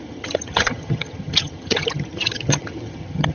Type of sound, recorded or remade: remade